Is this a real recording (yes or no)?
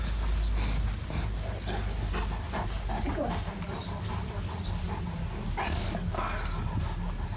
yes